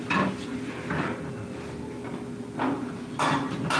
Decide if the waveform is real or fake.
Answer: real